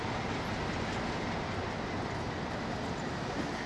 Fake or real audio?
real